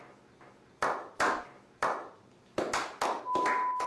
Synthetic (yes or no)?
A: no